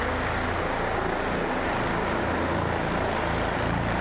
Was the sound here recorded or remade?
recorded